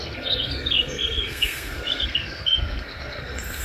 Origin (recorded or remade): remade